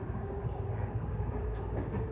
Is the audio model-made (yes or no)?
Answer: yes